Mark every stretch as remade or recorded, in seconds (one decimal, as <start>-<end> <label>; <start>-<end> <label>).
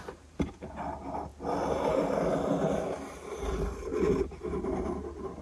0.0-1.3 remade; 1.3-3.4 recorded; 3.4-3.9 remade; 3.9-5.4 recorded